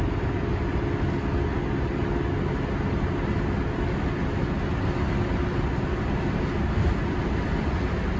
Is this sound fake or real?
real